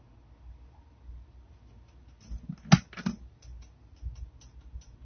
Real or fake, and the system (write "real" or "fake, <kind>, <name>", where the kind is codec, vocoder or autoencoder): real